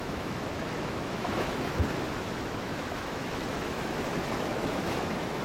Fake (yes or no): yes